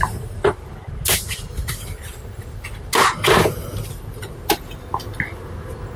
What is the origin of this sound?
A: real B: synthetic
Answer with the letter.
A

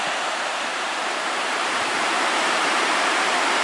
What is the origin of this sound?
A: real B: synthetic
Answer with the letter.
B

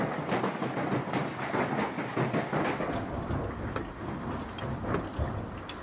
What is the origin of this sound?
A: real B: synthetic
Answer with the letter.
A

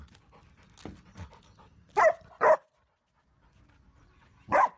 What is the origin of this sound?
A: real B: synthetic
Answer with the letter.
A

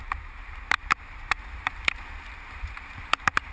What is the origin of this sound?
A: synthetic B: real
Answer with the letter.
A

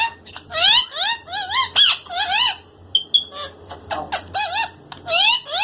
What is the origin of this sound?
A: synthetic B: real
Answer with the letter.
B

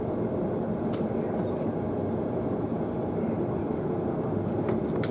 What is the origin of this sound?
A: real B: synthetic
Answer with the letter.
A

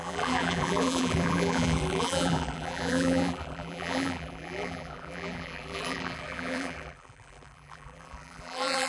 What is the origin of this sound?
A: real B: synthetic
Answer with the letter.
B